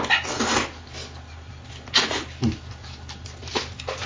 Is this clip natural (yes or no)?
yes